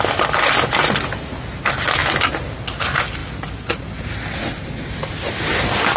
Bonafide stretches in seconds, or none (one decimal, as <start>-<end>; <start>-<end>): 0.0-6.0

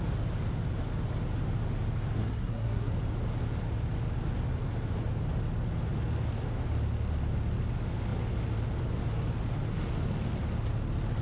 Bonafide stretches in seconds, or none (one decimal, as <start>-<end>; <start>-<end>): 0.0-2.2; 2.9-11.2

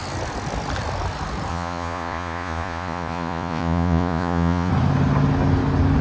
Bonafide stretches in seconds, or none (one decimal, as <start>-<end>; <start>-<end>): 0.0-1.5; 4.7-6.0

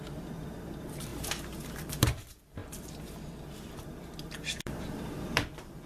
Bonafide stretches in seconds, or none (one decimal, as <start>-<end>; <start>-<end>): 1.1-1.7; 2.6-3.4